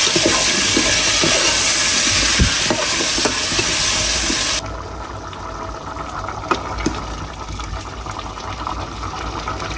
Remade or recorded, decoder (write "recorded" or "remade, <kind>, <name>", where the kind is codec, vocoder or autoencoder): recorded